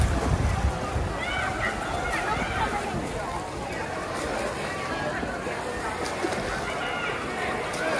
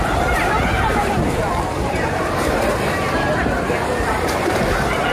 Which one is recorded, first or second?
first